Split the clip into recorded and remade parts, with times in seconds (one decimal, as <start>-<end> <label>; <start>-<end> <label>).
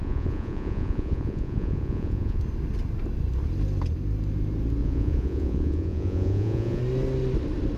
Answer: 0.0-2.4 remade; 2.4-4.8 recorded; 4.8-6.8 remade; 6.8-7.8 recorded